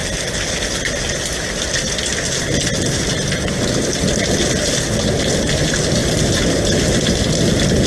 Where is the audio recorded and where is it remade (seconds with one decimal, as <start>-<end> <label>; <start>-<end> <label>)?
0.0-7.9 recorded